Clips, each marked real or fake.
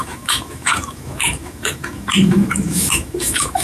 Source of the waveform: fake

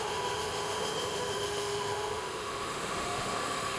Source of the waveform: fake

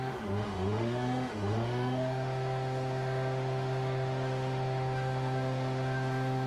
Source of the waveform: fake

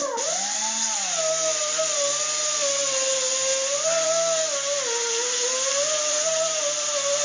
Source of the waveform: real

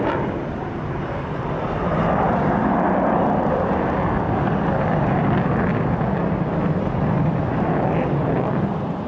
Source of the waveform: real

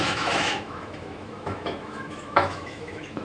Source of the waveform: fake